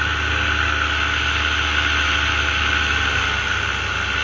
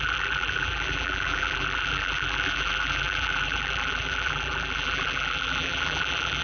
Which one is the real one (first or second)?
first